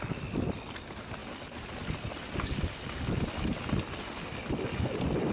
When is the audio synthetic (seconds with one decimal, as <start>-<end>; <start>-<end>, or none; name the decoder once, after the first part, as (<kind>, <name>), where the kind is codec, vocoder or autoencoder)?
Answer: none